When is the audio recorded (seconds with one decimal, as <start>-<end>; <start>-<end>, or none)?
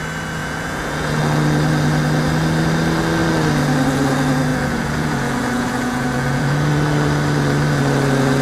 0.0-0.4; 1.2-4.5; 6.7-8.4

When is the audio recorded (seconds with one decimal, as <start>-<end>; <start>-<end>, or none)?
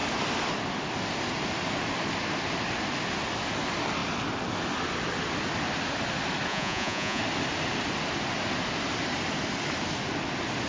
0.0-6.5; 7.2-10.7